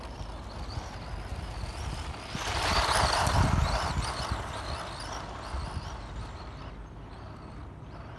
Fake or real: real